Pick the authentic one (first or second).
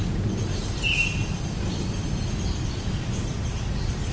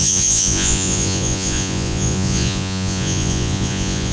first